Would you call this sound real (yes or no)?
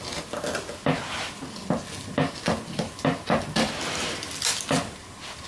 yes